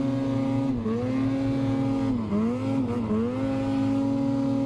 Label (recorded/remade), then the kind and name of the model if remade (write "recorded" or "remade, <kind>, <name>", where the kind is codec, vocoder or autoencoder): recorded